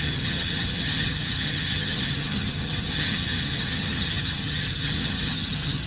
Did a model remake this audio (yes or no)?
yes